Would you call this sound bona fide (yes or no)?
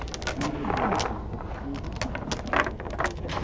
yes